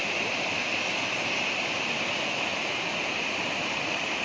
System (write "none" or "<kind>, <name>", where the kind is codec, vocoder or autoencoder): vocoder, BigVGAN v2